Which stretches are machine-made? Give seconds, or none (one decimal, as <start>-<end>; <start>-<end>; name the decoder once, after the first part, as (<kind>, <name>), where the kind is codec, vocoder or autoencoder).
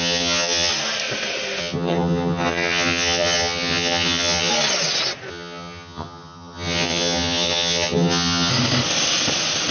0.0-0.7 (vocoder, HiFi-GAN); 1.6-4.5; 5.3-8.5